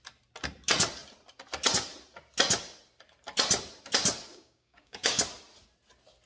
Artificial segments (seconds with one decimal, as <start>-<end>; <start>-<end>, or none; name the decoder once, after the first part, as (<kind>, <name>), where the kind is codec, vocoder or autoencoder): 4.3-5.2 (codec, DAC)